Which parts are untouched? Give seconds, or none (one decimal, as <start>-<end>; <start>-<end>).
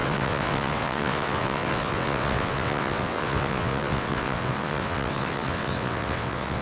none